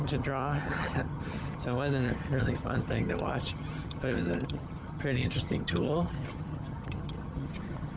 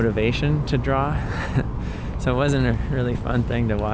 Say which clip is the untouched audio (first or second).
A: second